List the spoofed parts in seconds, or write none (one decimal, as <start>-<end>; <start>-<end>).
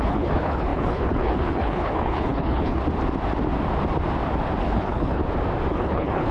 0.0-2.8; 4.6-5.2; 5.7-6.3